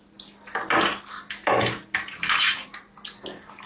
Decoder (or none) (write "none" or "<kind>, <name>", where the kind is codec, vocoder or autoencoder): none